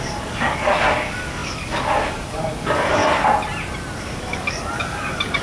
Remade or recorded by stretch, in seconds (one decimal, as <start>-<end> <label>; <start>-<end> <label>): 0.0-3.0 remade; 3.0-4.0 recorded; 4.0-5.4 remade